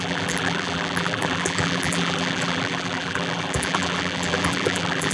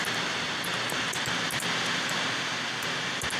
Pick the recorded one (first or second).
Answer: second